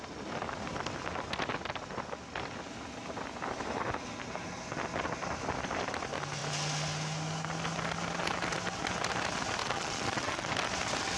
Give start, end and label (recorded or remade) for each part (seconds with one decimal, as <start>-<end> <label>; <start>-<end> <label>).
0.0-9.6 recorded; 9.6-10.5 remade; 10.5-11.2 recorded